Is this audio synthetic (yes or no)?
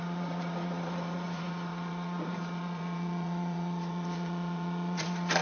yes